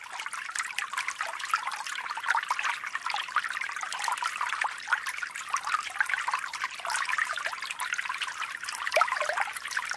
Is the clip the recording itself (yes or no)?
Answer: yes